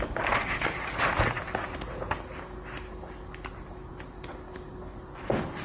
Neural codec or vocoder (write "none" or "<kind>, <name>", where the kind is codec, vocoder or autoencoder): none